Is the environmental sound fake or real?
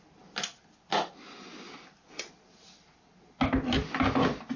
real